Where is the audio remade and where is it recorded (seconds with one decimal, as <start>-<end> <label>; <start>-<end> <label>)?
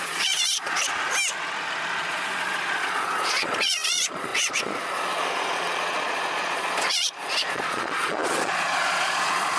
0.0-0.8 remade; 0.8-2.0 recorded; 2.0-9.6 remade